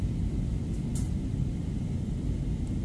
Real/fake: real